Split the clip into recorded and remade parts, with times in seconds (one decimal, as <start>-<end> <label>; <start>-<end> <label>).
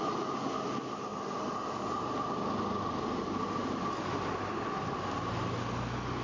0.0-6.2 recorded